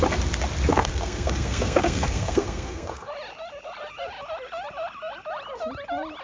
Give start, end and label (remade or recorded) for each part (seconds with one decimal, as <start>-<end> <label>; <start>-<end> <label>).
0.0-0.7 recorded; 0.7-3.1 remade; 3.1-6.2 recorded